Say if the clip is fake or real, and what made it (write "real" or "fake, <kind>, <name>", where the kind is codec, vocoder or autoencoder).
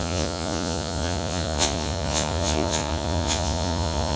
fake, vocoder, Vocos